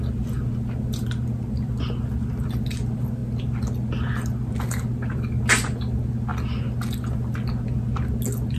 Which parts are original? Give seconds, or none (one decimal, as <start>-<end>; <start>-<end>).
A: 0.0-8.6